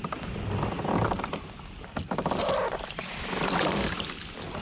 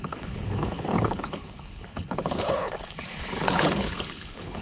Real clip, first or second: first